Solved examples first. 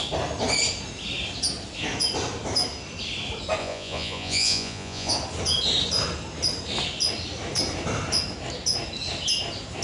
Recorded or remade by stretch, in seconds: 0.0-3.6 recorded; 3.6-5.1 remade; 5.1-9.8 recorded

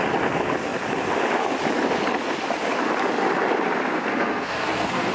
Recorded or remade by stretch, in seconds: 0.0-3.9 recorded; 3.9-5.1 remade

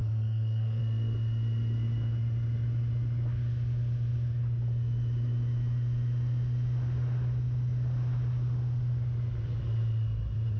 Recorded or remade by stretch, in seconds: 0.0-0.8 remade; 0.8-10.6 recorded